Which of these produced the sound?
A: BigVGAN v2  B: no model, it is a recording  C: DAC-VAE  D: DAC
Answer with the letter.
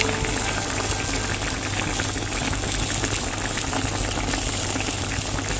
B